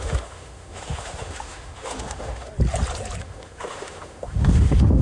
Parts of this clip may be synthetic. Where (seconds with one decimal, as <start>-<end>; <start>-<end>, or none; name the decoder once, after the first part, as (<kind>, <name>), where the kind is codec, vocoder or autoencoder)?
0.0-2.5 (autoencoder, DAC-VAE); 3.2-5.0